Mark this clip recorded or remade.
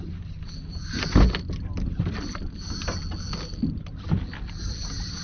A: recorded